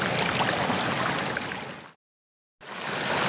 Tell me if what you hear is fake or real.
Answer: real